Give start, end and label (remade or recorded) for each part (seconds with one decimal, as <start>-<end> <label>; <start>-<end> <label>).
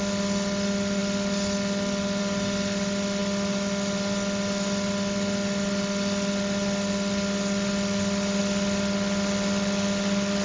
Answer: 0.0-10.4 recorded